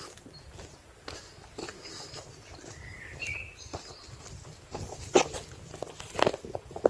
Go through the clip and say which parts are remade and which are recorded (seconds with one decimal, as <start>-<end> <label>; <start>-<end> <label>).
0.0-6.9 recorded